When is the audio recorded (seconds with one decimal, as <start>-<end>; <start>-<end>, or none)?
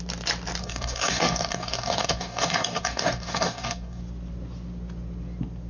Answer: 0.0-0.6; 4.0-5.7